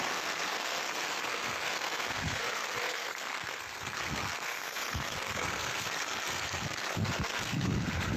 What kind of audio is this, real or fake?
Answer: fake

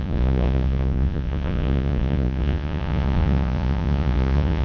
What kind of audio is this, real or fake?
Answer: fake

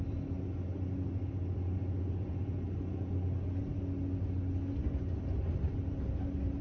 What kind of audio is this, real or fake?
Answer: real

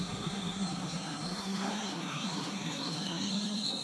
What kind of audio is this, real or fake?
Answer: fake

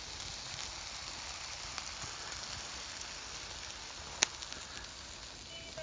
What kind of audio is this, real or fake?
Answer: real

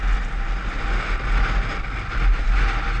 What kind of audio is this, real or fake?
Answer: real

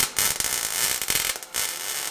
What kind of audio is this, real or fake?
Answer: real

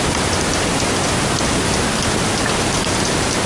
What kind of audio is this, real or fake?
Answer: real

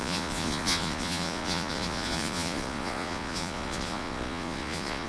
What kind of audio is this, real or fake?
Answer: fake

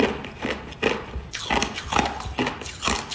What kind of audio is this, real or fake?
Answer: real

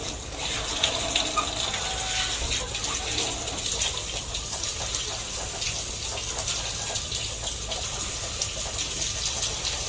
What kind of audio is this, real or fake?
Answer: real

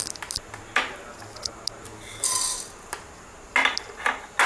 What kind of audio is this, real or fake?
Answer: real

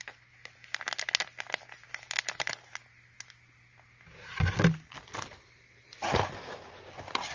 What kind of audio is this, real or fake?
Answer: real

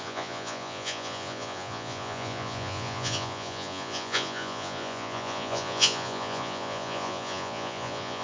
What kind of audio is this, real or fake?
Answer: fake